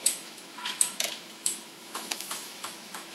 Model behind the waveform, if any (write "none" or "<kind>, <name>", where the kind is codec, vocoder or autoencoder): autoencoder, DAC-VAE